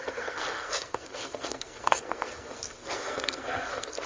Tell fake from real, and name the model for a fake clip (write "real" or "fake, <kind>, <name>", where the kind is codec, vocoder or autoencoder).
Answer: fake, codec, SNAC